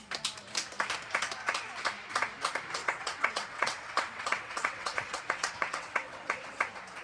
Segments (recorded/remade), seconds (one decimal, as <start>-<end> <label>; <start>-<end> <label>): 0.0-2.8 recorded; 2.8-6.6 remade; 6.6-7.0 recorded